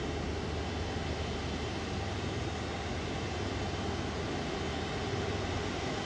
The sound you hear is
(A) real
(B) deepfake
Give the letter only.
A